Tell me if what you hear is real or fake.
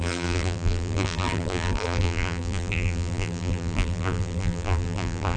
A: fake